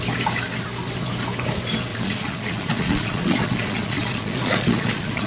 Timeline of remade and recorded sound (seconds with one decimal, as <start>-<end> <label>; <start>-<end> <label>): 0.0-1.9 recorded; 1.9-5.3 remade